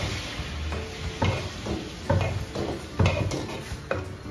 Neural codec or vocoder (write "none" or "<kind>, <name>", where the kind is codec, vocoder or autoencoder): none